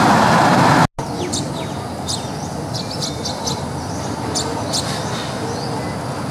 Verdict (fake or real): real